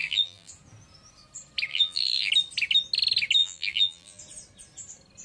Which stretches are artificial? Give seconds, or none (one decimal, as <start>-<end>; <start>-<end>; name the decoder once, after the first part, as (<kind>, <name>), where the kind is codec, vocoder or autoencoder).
0.0-0.5 (vocoder, BigVGAN v2); 1.7-2.3; 3.4-4.2